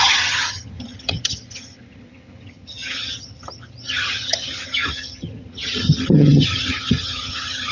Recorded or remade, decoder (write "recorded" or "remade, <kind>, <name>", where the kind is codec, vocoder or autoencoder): remade, vocoder, HiFi-GAN